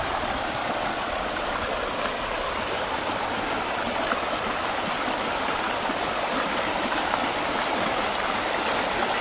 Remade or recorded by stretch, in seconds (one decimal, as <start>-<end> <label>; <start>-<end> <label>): 0.0-9.2 recorded